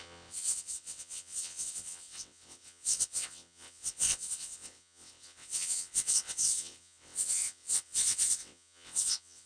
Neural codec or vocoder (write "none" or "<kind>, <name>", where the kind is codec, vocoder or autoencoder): vocoder, WaveNeXt